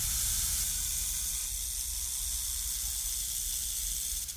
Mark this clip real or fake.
real